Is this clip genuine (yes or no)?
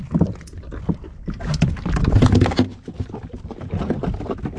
yes